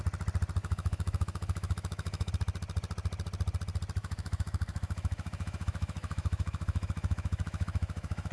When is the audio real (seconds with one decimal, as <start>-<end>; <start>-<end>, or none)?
0.0-0.6; 2.3-4.0